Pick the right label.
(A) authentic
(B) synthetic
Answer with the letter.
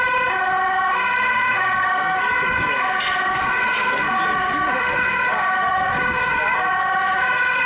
A